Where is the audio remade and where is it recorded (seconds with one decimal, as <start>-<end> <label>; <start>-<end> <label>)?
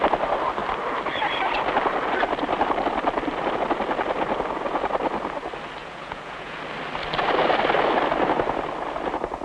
0.0-5.8 recorded; 5.8-6.6 remade; 6.6-9.4 recorded